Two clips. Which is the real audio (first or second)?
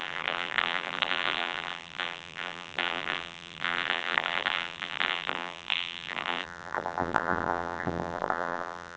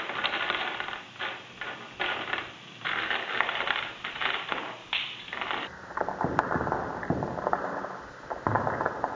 second